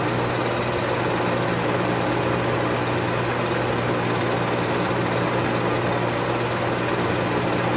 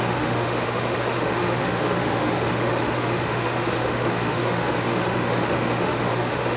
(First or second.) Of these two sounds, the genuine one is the first